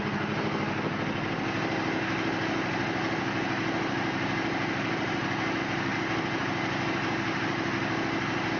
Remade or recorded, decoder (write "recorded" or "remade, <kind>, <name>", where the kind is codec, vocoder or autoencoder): recorded